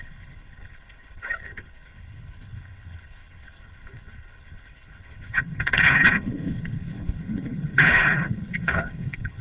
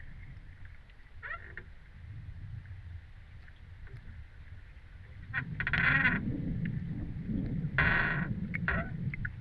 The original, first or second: second